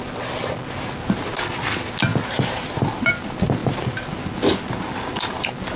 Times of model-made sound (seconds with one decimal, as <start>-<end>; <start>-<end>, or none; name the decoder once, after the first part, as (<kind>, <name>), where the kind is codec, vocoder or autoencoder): 2.1-3.1 (vocoder, BigVGAN v2)